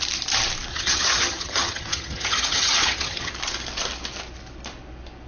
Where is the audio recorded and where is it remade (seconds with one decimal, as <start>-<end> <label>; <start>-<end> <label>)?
0.0-0.7 recorded; 0.7-3.3 remade; 3.3-5.3 recorded